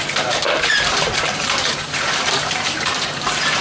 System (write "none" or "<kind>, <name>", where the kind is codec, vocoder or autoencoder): vocoder, BigVGAN v2